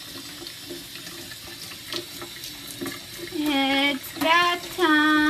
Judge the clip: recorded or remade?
recorded